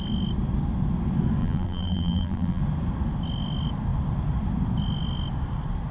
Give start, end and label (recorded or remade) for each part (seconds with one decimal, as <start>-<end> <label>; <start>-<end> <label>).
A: 0.0-1.4 recorded; 1.4-2.6 remade; 2.6-5.9 recorded